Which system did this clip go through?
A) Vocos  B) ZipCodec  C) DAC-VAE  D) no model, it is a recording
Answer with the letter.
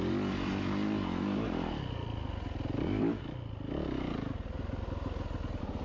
D